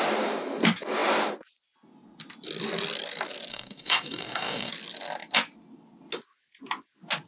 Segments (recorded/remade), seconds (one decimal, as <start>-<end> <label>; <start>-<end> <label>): 0.0-3.5 recorded; 3.5-4.7 remade; 4.7-7.3 recorded